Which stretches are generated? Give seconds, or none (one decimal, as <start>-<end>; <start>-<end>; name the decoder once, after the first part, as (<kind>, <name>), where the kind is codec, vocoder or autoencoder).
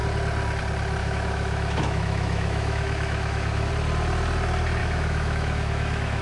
1.0-3.7 (autoencoder, DAC-VAE); 4.8-6.2